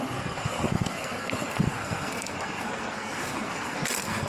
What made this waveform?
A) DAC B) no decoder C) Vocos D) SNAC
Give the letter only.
D